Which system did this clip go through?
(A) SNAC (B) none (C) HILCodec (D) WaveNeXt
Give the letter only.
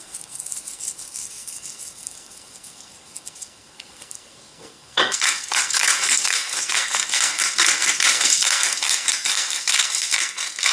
A